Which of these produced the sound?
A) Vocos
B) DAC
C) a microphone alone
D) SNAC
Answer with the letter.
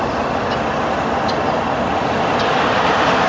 C